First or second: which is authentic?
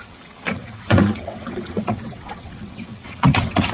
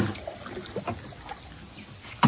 second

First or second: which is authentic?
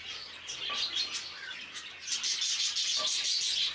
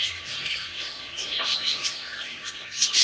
first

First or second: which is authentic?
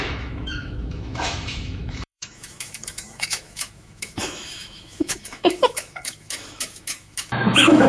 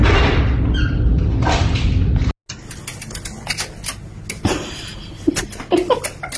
second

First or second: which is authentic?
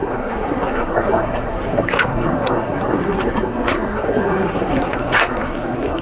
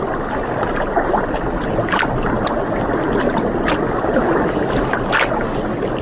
second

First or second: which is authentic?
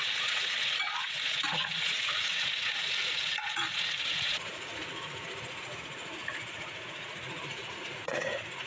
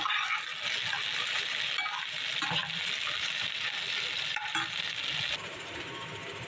second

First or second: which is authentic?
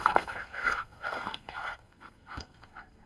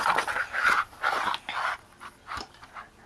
second